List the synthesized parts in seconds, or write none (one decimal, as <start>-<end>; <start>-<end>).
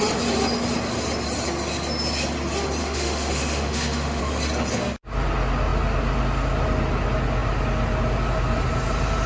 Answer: 2.8-4.2